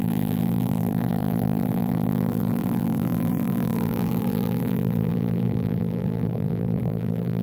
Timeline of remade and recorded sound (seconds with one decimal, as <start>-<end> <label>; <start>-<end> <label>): 0.0-7.4 remade